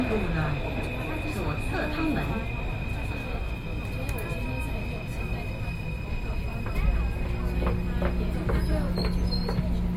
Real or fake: real